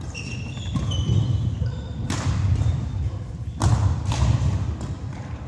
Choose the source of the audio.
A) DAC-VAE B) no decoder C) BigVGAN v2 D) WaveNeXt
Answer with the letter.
C